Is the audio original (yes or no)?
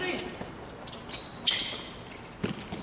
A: yes